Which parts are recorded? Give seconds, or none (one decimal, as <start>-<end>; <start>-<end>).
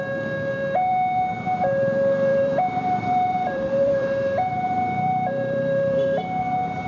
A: 0.0-2.3; 6.4-6.9